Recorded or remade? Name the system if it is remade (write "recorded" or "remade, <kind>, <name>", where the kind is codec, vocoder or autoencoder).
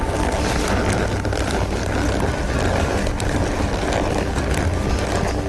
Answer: recorded